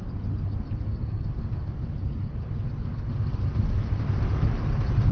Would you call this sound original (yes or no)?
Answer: yes